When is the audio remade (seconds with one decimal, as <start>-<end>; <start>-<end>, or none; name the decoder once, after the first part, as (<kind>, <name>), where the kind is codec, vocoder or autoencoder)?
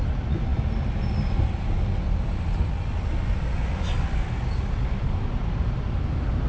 none